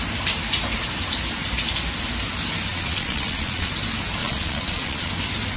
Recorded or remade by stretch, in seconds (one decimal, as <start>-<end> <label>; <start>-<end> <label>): 0.0-2.7 recorded; 2.7-3.7 remade; 3.7-4.2 recorded; 4.2-5.1 remade; 5.1-5.6 recorded